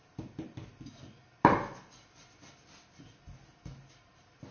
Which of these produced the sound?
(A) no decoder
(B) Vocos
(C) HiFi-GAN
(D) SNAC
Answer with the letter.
A